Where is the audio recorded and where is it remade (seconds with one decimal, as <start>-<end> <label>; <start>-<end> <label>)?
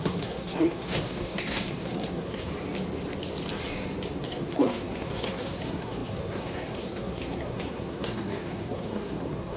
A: 0.0-2.5 remade; 2.5-4.2 recorded; 4.2-9.6 remade